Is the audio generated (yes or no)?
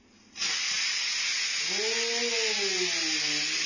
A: no